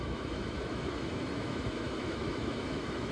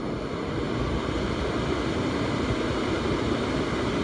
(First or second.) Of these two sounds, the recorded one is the second